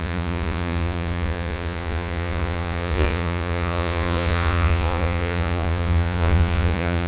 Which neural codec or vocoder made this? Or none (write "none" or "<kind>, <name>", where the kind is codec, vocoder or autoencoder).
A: vocoder, Vocos